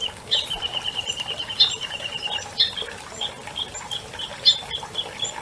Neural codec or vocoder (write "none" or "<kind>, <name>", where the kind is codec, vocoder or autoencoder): none